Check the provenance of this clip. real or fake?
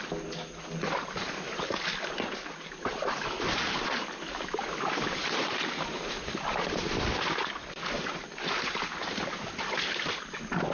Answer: real